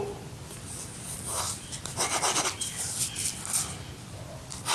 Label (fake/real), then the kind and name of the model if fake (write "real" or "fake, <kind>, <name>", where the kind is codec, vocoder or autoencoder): real